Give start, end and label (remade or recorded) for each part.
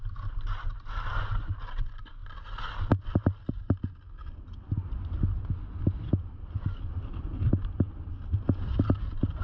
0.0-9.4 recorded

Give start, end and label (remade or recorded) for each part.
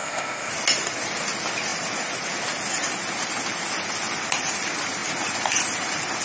0.0-0.5 remade; 0.5-6.2 recorded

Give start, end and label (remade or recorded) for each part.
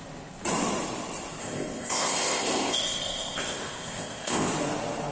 0.0-1.4 recorded; 1.4-4.5 remade; 4.5-5.1 recorded